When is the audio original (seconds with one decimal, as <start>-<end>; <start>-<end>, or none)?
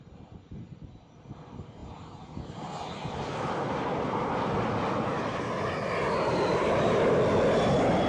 0.0-6.5; 7.1-8.1